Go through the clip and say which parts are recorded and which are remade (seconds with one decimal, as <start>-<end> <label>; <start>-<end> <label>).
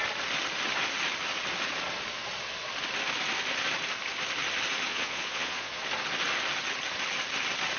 0.0-4.9 recorded; 4.9-5.8 remade; 5.8-7.8 recorded